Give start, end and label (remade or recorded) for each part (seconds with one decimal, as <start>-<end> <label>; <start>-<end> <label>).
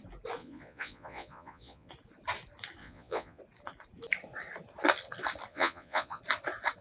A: 0.0-0.4 recorded; 0.4-1.9 remade; 1.9-2.8 recorded; 2.8-3.4 remade; 3.4-5.5 recorded; 5.5-6.2 remade; 6.2-6.8 recorded